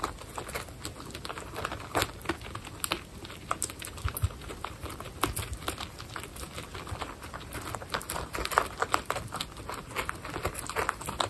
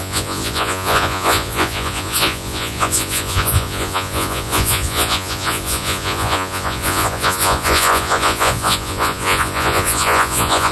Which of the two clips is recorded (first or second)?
first